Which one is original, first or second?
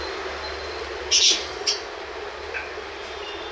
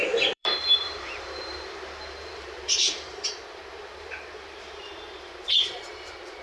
first